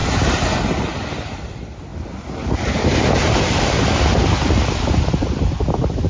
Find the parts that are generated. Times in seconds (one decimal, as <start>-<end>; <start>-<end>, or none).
none